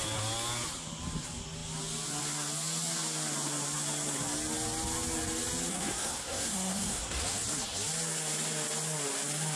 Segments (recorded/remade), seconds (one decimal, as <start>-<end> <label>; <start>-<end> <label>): 0.0-5.7 recorded; 5.7-7.2 remade; 7.2-9.6 recorded